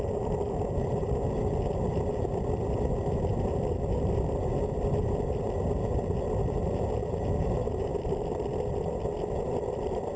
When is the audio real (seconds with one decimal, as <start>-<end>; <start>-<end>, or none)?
0.0-10.2